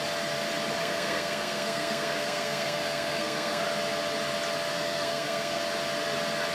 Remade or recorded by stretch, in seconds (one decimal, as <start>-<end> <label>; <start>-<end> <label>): 0.0-0.8 recorded; 0.8-3.6 remade; 3.6-4.7 recorded; 4.7-5.6 remade; 5.6-6.5 recorded